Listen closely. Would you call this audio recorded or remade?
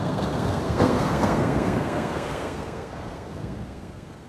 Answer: remade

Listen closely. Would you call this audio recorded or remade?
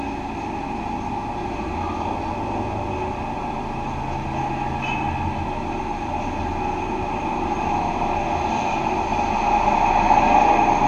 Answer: recorded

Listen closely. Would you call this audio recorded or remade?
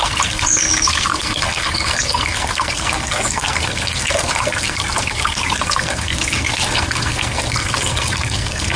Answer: remade